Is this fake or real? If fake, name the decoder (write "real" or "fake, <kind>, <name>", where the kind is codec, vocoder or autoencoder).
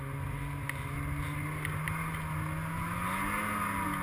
real